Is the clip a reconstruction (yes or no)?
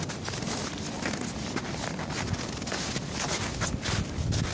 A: no